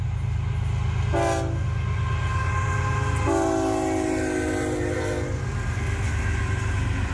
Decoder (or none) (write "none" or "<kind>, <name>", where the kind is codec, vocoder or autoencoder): none